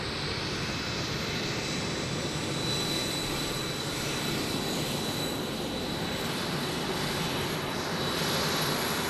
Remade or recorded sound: recorded